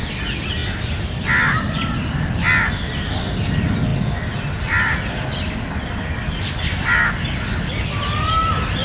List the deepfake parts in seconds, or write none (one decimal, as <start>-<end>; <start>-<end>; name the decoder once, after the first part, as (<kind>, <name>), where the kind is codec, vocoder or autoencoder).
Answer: none